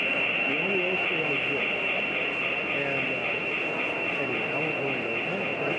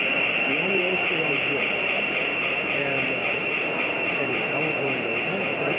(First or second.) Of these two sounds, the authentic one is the first